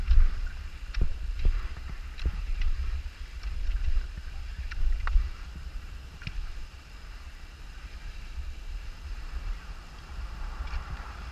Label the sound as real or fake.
fake